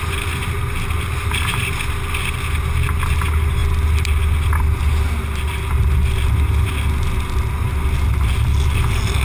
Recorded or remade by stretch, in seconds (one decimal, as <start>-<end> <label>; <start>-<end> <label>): 0.0-9.2 recorded